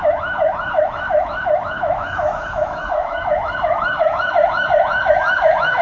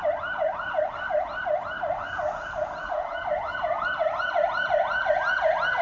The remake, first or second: first